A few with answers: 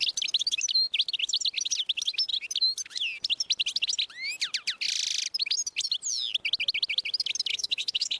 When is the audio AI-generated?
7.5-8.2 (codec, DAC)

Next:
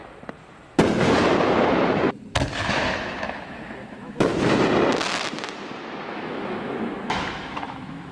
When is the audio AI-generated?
2.9-4.3 (autoencoder, DAC-VAE); 6.1-8.1

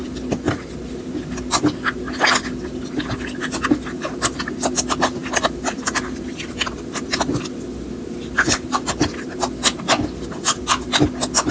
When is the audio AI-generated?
5.2-7.3 (vocoder, BigVGAN v2)

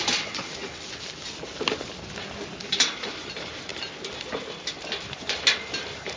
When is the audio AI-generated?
0.0-0.6 (vocoder, BigVGAN v2); 2.7-3.7; 5.6-6.2

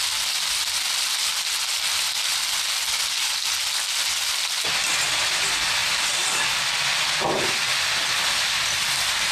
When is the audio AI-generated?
none

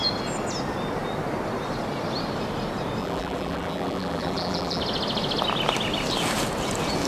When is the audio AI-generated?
3.0-4.8 (vocoder, BigVGAN v2)